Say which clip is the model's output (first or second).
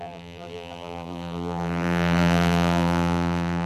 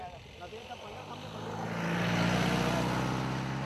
first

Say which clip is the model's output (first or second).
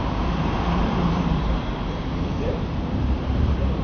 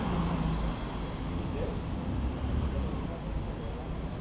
first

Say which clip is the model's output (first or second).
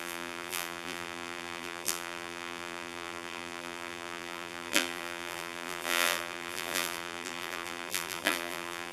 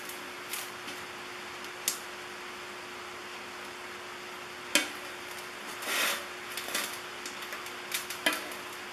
first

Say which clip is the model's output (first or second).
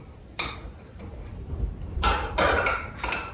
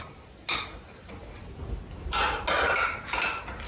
first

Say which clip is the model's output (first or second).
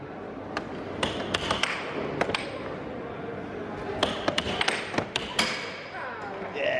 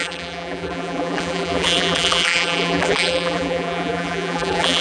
second